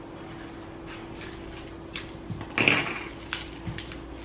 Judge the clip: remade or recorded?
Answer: recorded